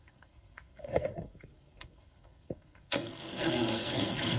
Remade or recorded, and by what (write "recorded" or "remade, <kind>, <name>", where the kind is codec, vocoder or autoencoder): remade, codec, SNAC